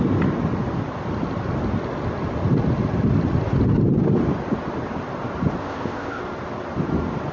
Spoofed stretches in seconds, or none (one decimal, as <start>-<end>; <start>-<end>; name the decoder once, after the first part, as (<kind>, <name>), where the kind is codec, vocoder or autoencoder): 5.6-6.2 (codec, ZipCodec)